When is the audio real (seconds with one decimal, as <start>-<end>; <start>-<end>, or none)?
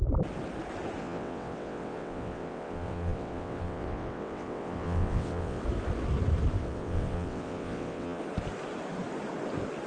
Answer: 0.0-1.0; 5.6-6.6; 8.2-9.9